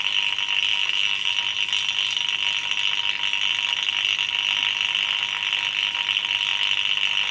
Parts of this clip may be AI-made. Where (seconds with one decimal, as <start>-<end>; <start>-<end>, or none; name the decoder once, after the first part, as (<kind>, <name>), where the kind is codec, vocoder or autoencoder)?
0.7-1.3 (autoencoder, DAC-VAE)

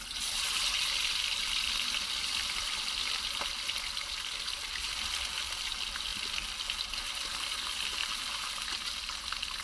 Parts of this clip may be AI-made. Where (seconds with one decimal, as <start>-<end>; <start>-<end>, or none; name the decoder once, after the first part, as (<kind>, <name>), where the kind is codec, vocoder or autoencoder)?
none

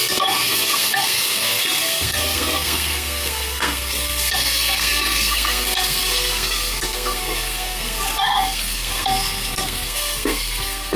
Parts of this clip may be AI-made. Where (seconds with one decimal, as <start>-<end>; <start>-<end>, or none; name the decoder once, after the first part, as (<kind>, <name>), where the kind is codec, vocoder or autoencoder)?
0.0-11.0 (codec, SNAC)